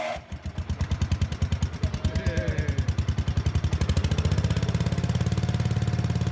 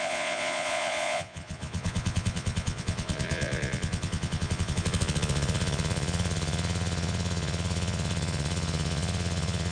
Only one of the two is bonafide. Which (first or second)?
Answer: first